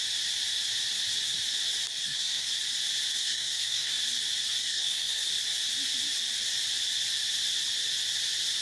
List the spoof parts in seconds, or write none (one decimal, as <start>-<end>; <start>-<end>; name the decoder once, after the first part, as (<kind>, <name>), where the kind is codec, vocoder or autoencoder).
2.0-2.5 (codec, SNAC); 3.1-4.0; 4.6-5.3